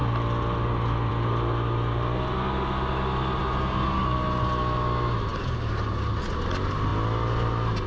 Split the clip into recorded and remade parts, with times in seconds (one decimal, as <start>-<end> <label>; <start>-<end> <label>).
0.0-7.9 recorded